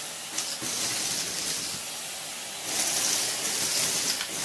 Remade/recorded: recorded